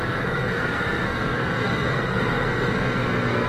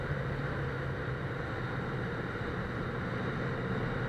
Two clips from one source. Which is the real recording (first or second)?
second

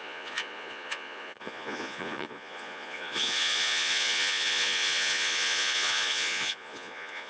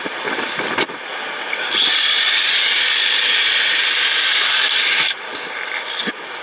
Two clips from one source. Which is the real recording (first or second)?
second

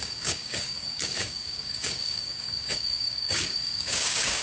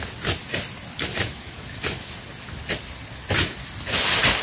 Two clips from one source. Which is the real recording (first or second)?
second